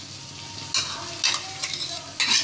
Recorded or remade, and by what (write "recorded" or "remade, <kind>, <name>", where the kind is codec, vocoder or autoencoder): recorded